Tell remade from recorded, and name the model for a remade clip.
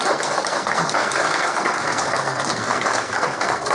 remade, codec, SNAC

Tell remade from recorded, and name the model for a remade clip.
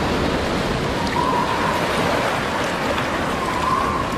recorded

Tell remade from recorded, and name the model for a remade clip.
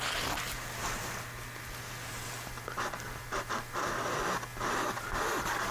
recorded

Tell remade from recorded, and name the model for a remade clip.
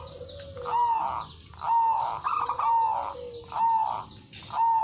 recorded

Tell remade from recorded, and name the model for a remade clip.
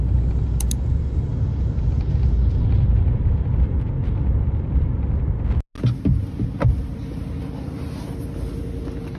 recorded